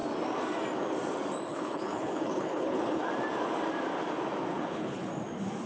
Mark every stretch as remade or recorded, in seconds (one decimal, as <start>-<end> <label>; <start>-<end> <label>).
0.0-1.5 recorded; 1.5-3.1 remade; 3.1-4.5 recorded; 4.5-5.1 remade; 5.1-5.7 recorded

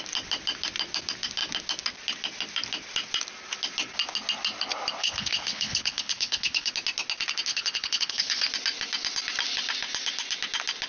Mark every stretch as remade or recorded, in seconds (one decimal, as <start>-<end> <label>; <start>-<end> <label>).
0.0-5.0 recorded; 5.0-6.7 remade; 6.7-7.5 recorded; 7.5-8.5 remade; 8.5-10.9 recorded

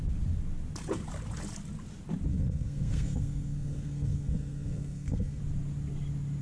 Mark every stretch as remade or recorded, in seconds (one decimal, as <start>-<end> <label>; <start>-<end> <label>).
0.0-2.3 recorded; 2.3-5.4 remade; 5.4-6.4 recorded

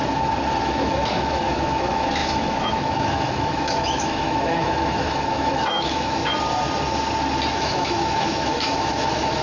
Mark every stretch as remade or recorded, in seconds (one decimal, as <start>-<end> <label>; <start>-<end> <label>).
0.0-0.6 recorded; 0.6-6.3 remade; 6.3-7.5 recorded; 7.5-9.4 remade

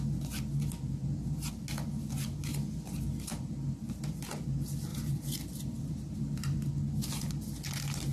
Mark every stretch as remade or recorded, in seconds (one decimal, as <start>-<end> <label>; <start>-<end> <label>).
0.0-4.9 recorded; 4.9-6.7 remade; 6.7-8.1 recorded

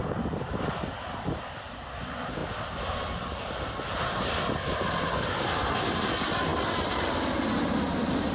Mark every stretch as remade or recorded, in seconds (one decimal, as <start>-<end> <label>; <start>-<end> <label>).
0.0-8.3 recorded